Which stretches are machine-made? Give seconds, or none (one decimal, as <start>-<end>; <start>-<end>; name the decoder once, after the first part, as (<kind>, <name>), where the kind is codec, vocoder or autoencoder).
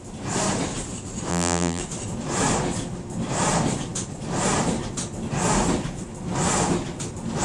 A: 1.3-1.8 (vocoder, BigVGAN v2)